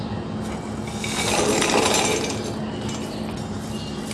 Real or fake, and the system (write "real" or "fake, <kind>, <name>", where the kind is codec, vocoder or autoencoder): real